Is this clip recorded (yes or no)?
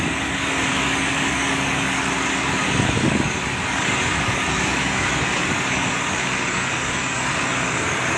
no